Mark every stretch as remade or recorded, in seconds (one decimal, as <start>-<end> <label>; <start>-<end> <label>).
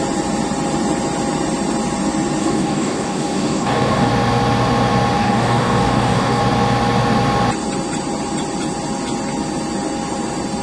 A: 0.0-2.4 recorded; 2.4-4.1 remade; 4.1-5.2 recorded; 5.2-6.4 remade; 6.4-10.6 recorded